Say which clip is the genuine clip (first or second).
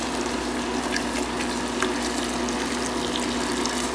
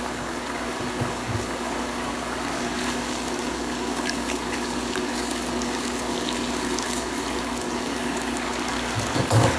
first